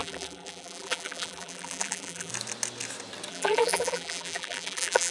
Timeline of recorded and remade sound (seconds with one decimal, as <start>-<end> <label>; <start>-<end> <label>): 0.0-2.3 remade; 2.3-3.3 recorded; 3.3-5.1 remade